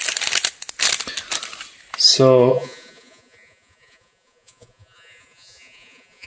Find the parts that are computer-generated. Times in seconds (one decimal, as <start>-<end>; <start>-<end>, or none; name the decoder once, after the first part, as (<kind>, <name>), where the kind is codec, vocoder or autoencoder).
2.5-6.3 (vocoder, Vocos)